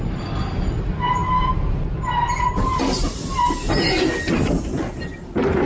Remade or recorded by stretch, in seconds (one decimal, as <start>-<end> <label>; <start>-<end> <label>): 0.0-5.7 recorded

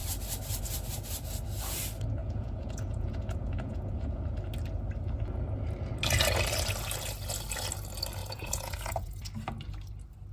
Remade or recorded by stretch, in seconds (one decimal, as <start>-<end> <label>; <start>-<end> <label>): 0.0-2.2 recorded; 2.2-4.2 remade; 4.2-8.2 recorded; 8.2-9.2 remade; 9.2-10.3 recorded